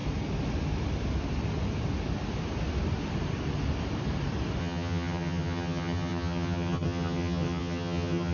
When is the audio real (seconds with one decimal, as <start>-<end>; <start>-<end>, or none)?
0.0-4.6